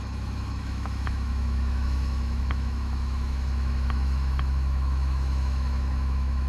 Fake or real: fake